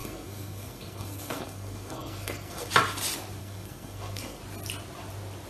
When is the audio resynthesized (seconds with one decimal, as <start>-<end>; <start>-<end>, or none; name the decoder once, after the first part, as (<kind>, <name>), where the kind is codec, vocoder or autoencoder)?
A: 0.0-2.7 (codec, SNAC); 3.4-4.4